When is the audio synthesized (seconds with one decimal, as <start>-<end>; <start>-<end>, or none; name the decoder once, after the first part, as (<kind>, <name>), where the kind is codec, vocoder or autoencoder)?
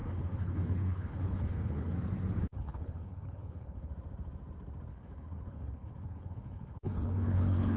0.0-1.9 (codec, HILCodec); 2.4-3.9; 4.9-7.8